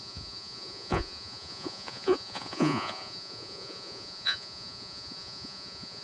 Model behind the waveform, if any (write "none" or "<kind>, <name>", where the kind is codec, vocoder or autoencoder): vocoder, Vocos